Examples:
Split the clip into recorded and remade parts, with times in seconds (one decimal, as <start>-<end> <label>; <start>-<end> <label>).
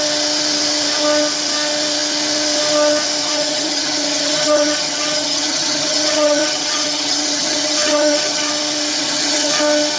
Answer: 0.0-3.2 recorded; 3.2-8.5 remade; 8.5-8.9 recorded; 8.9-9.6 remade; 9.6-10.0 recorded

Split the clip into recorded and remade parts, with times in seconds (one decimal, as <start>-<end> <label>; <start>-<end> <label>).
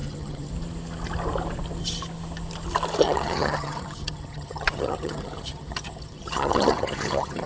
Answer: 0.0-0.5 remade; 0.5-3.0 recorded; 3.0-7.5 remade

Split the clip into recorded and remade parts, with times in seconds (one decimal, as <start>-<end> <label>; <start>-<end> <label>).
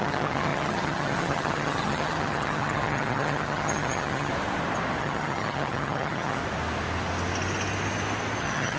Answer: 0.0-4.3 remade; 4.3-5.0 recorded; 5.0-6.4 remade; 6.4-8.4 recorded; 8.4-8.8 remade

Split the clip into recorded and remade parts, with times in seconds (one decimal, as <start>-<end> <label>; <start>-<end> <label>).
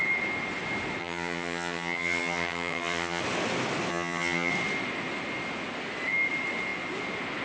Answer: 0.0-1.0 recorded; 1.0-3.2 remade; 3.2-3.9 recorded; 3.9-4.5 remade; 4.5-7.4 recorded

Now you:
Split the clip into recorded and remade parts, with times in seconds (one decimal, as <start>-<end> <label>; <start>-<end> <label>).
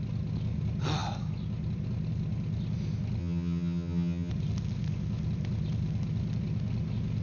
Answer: 0.0-3.2 recorded; 3.2-4.3 remade; 4.3-7.2 recorded